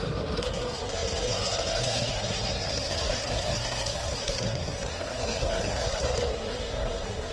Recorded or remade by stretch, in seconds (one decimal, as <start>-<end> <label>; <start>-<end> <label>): 0.0-7.3 remade